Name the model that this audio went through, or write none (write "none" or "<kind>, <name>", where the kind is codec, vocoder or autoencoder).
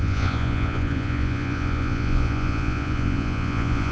vocoder, Vocos